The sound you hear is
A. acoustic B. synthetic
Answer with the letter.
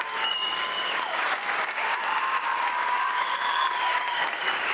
B